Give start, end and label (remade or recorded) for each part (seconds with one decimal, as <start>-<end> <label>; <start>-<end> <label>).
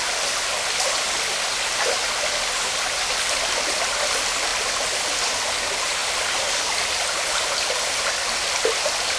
0.0-9.2 recorded